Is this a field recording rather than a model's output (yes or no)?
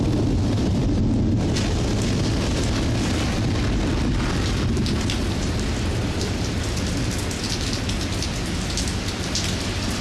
yes